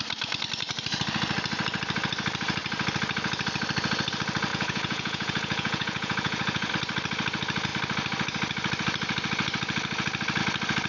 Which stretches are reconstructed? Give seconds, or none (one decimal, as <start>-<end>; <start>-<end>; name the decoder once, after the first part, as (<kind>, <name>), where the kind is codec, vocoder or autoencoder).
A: 4.5-6.7 (vocoder, Vocos)